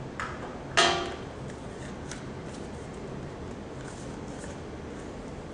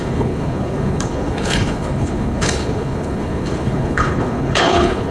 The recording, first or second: first